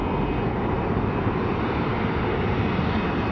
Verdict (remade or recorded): recorded